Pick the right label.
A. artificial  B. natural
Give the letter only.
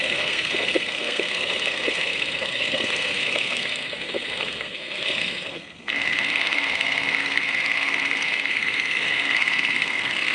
A